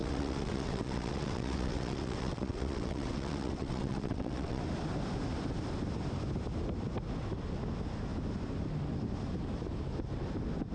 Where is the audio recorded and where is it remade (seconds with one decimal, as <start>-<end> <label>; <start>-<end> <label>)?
0.0-4.6 remade; 4.6-10.7 recorded